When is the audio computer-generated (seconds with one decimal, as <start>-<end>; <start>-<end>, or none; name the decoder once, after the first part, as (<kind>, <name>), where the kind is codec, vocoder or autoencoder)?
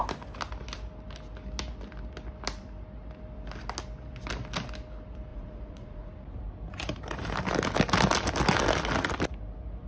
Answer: 5.3-6.1 (vocoder, Vocos)